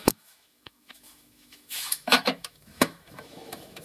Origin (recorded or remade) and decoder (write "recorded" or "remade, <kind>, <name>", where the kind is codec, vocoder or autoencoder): remade, autoencoder, DAC-VAE